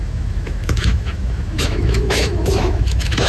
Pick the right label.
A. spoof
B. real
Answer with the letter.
A